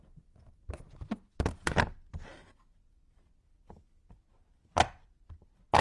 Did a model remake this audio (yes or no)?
no